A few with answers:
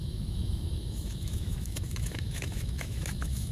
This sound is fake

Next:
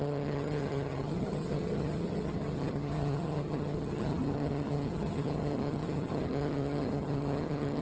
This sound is fake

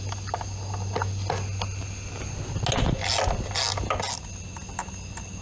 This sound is real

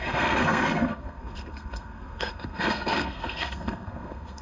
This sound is fake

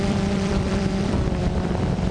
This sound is fake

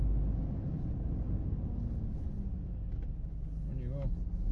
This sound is real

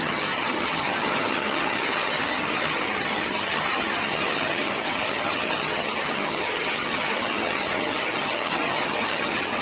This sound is fake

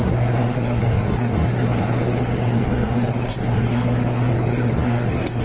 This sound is fake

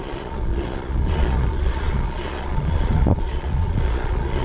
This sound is fake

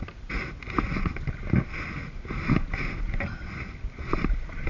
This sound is real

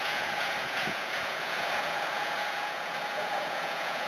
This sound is fake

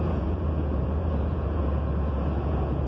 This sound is fake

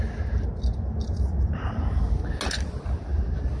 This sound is real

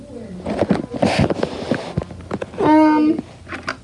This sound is real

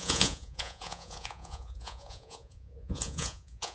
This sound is fake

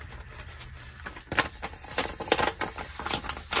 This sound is fake